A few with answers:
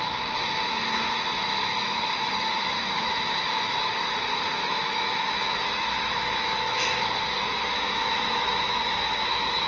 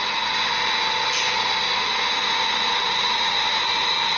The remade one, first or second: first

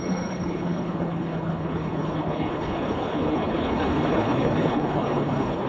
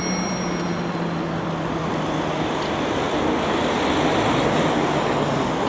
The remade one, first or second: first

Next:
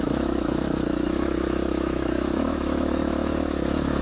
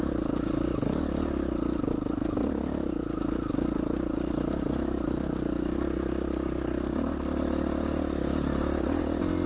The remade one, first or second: first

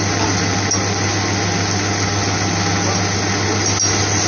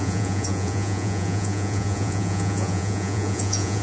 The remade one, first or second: second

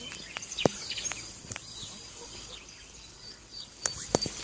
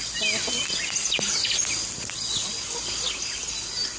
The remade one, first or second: first